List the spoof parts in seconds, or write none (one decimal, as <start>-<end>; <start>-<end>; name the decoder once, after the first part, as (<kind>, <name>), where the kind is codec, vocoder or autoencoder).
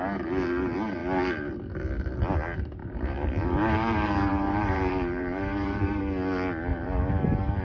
2.8-6.0 (vocoder, BigVGAN v2); 6.7-7.6